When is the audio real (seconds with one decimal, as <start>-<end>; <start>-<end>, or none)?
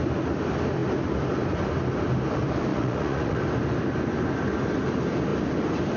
0.0-2.7; 3.4-6.0